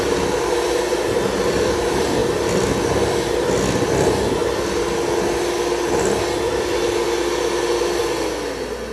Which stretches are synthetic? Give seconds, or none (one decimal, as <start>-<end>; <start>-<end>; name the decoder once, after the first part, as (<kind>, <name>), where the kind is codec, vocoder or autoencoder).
none